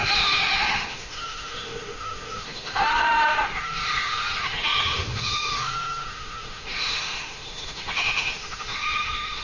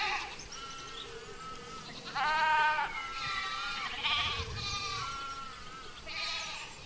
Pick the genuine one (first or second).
second